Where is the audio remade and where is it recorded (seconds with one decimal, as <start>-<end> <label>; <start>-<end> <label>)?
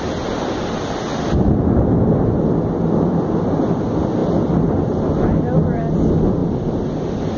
0.0-4.2 recorded; 4.2-4.8 remade; 4.8-6.4 recorded; 6.4-6.9 remade; 6.9-7.4 recorded